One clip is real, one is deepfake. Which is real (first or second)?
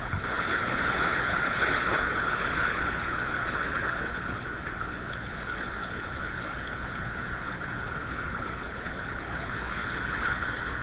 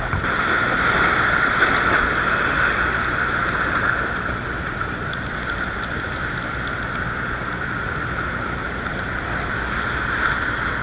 second